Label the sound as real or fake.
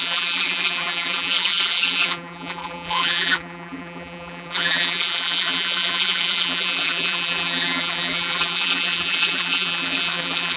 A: fake